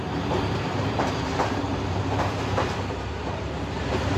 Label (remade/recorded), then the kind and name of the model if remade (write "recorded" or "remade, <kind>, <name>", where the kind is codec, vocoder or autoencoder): remade, vocoder, BigVGAN v2